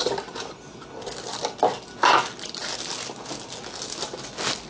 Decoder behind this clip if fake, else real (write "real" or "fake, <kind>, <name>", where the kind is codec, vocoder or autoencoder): real